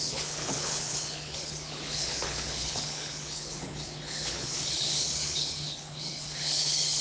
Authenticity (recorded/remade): remade